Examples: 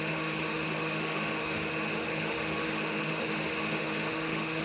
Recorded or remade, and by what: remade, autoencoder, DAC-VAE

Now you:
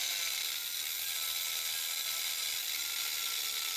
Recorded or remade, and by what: recorded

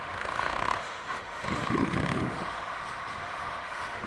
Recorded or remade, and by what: remade, autoencoder, DAC-VAE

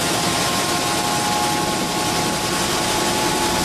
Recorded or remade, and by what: recorded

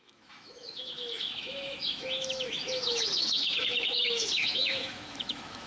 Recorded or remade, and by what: remade, autoencoder, DAC-VAE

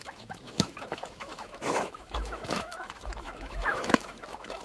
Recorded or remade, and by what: remade, autoencoder, DAC-VAE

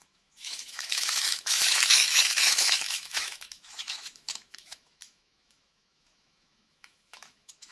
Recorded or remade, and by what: remade, autoencoder, DAC-VAE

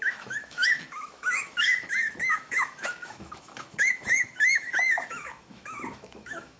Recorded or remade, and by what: remade, autoencoder, DAC-VAE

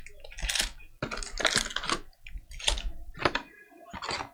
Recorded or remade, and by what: recorded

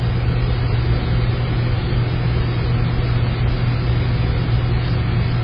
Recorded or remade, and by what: recorded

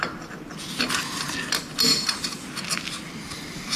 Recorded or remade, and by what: recorded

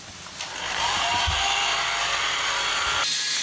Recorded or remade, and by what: recorded